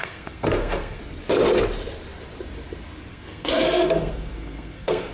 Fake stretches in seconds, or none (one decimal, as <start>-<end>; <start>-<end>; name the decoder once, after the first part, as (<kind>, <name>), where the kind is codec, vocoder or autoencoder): 0.0-1.0 (codec, SNAC); 3.1-5.1